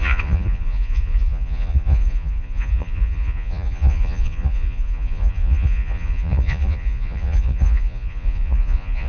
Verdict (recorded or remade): remade